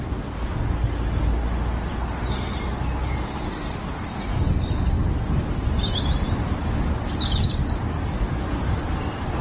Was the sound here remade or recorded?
recorded